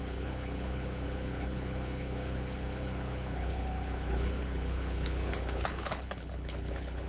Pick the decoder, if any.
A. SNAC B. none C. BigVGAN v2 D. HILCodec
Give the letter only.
D